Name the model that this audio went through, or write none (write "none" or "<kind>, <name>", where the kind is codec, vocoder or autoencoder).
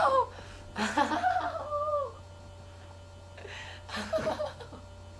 none